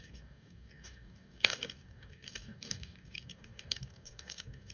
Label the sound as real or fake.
fake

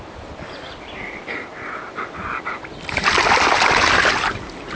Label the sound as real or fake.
fake